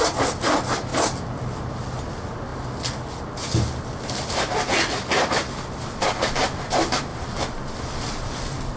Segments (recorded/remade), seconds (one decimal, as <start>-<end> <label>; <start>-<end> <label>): 0.0-7.1 recorded; 7.1-7.7 remade; 7.7-8.8 recorded

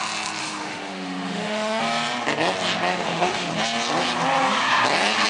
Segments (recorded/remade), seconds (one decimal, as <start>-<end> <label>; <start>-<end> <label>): 0.0-0.4 recorded; 0.4-1.8 remade; 1.8-2.9 recorded; 2.9-3.5 remade; 3.5-5.3 recorded

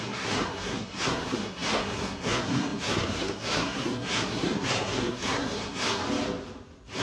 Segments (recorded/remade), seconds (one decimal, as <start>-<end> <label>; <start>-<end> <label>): 0.0-6.0 remade; 6.0-7.0 recorded

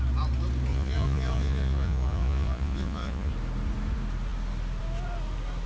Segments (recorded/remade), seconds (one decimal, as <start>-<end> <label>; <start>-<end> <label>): 0.0-0.7 recorded; 0.7-3.3 remade; 3.3-5.7 recorded

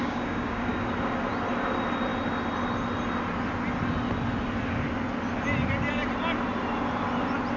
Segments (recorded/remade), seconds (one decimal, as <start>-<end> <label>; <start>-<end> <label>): 0.0-0.7 remade; 0.7-7.6 recorded

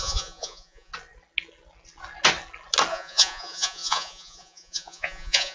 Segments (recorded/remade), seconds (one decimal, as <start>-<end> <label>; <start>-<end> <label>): 0.0-0.9 remade; 0.9-2.9 recorded; 2.9-5.5 remade

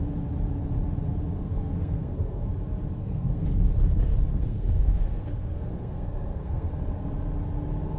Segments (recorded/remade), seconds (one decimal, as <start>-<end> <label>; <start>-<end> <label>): 0.0-1.4 recorded; 1.4-2.5 remade; 2.5-3.0 recorded; 3.0-3.7 remade; 3.7-4.3 recorded; 4.3-6.7 remade; 6.7-8.0 recorded